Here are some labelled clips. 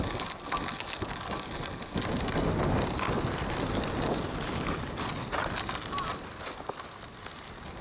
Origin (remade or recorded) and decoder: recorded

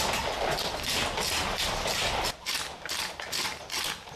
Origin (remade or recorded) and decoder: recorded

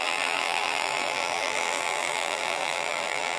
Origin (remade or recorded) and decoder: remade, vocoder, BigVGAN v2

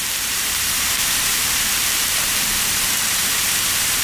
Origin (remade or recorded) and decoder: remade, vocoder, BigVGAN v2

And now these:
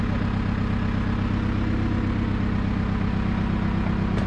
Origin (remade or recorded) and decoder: recorded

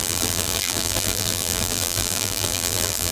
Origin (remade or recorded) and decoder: remade, vocoder, BigVGAN v2